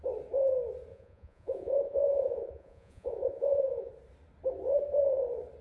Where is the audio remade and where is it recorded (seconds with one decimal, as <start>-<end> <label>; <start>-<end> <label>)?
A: 0.0-0.9 recorded; 0.9-3.9 remade; 3.9-5.6 recorded